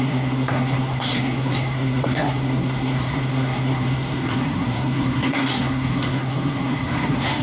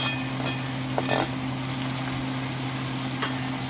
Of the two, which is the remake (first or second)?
first